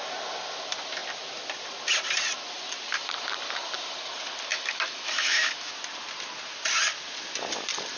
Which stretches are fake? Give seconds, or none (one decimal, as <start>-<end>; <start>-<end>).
4.5-5.8